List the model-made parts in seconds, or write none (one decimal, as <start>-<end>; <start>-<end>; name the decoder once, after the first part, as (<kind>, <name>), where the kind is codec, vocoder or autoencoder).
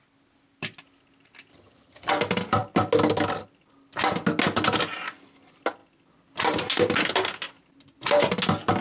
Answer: 1.5-2.1 (vocoder, HiFi-GAN)